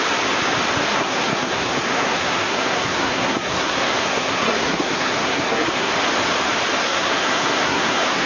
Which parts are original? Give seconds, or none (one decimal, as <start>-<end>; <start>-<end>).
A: 0.0-0.9; 5.9-6.8